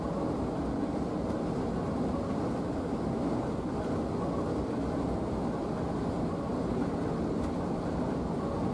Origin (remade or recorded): recorded